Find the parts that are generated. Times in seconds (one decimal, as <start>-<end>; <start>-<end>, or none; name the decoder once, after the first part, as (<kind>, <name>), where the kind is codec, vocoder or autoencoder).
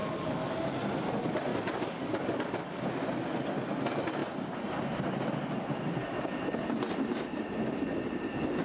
0.0-0.5 (codec, DAC); 1.5-2.8